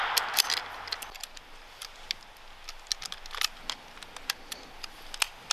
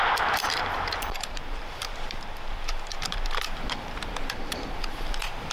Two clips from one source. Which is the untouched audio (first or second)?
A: first